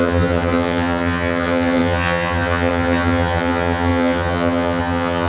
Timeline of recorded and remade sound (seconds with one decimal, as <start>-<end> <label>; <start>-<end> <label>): 0.0-5.3 remade